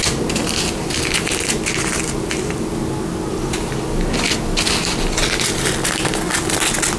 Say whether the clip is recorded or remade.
recorded